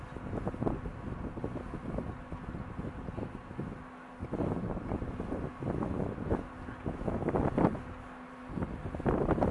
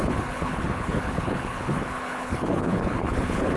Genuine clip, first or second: first